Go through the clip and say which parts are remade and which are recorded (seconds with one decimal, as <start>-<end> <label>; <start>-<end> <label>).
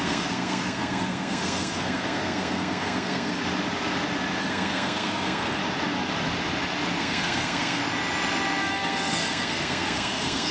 0.0-3.4 remade; 3.4-4.4 recorded; 4.4-5.6 remade; 5.6-7.0 recorded; 7.0-7.8 remade; 7.8-8.6 recorded; 8.6-10.5 remade